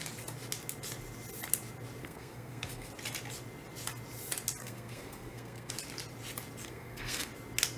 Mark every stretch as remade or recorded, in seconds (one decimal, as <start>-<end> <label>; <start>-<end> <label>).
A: 0.0-2.0 recorded; 2.0-2.9 remade; 2.9-4.6 recorded; 4.6-5.7 remade; 5.7-6.6 recorded; 6.6-7.3 remade; 7.3-7.8 recorded